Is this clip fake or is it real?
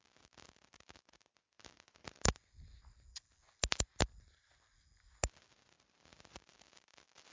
real